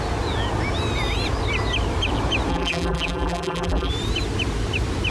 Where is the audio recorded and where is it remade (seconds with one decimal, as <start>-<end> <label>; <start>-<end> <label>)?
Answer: 0.0-2.5 recorded; 2.5-3.9 remade; 3.9-5.1 recorded